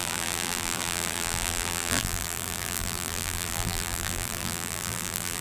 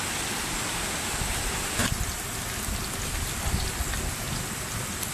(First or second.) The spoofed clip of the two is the first